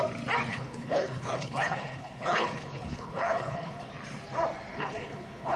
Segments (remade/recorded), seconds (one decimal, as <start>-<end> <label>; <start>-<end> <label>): 0.0-0.5 recorded; 0.5-3.9 remade; 3.9-4.7 recorded; 4.7-5.6 remade